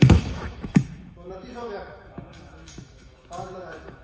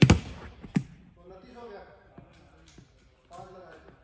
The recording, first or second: second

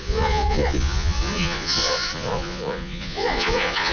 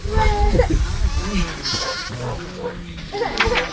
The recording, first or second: second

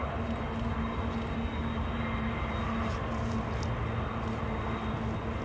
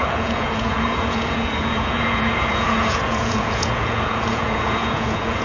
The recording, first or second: first